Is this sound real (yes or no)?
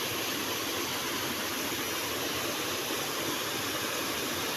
yes